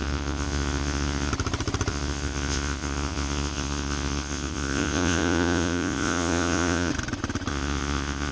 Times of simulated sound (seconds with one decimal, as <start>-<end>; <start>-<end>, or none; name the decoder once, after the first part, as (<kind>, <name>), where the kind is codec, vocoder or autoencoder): 0.0-1.3 (vocoder, Vocos); 1.9-6.9; 7.5-8.3